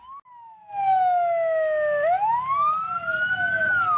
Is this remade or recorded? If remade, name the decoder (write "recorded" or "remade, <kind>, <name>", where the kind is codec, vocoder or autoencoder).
recorded